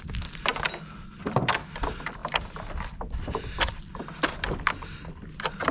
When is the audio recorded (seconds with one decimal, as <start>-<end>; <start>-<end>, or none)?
0.0-5.7